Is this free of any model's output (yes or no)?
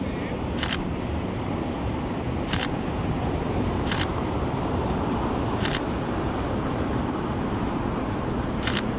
no